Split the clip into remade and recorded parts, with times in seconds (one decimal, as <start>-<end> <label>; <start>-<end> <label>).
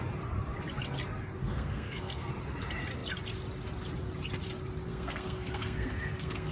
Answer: 0.0-1.4 recorded; 1.4-2.3 remade; 2.3-4.9 recorded; 4.9-6.5 remade